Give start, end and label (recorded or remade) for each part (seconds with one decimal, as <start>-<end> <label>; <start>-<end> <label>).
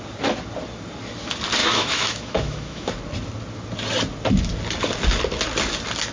0.0-1.6 recorded; 1.6-2.9 remade; 2.9-6.1 recorded